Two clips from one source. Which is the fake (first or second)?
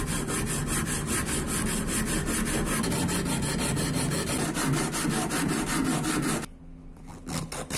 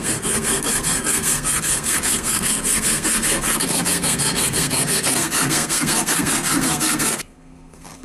second